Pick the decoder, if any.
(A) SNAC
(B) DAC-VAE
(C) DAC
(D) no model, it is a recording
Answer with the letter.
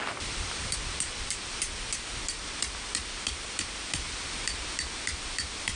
D